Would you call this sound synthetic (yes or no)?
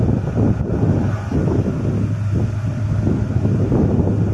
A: no